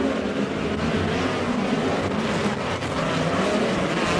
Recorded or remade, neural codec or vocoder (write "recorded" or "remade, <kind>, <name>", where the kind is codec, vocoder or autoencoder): recorded